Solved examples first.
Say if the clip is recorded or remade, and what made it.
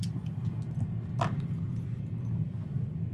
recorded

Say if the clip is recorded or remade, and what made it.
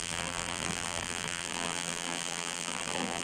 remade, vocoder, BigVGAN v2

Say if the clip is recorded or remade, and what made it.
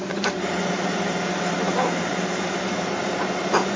remade, vocoder, BigVGAN v2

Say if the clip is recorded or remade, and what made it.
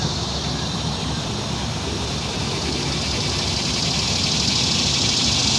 recorded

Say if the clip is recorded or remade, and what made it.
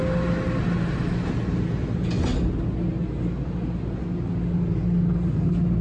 recorded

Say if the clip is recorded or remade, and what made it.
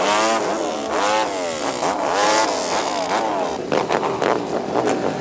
recorded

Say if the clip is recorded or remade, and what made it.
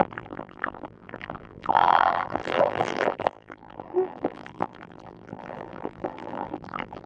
remade, vocoder, BigVGAN v2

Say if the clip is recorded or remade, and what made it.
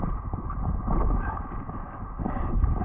recorded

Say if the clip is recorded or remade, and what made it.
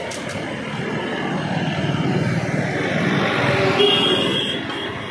recorded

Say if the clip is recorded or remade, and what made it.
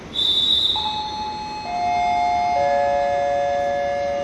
recorded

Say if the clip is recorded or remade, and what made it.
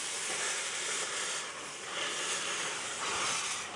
remade, vocoder, BigVGAN v2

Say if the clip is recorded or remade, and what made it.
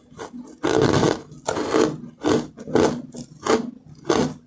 recorded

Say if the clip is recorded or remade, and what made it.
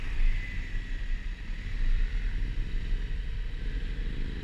remade, vocoder, BigVGAN v2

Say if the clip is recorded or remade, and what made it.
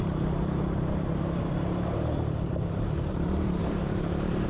remade, vocoder, BigVGAN v2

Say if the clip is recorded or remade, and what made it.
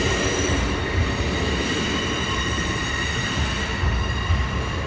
recorded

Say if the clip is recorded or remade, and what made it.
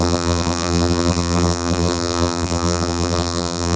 remade, vocoder, BigVGAN v2